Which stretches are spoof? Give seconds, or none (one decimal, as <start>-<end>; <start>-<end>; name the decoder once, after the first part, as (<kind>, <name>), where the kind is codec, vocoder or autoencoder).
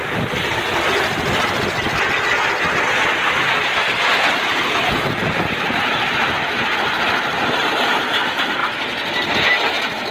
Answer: none